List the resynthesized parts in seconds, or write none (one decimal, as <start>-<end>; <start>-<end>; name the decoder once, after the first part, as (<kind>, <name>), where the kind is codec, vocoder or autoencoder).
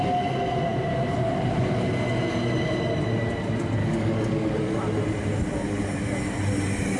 3.8-4.8 (codec, DAC)